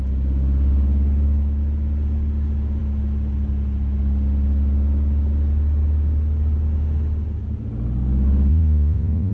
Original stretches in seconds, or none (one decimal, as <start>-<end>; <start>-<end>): 0.0-8.5